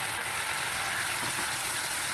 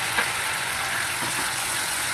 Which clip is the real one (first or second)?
first